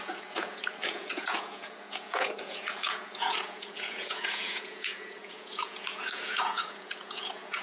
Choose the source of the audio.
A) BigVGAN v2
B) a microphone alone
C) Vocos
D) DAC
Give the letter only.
C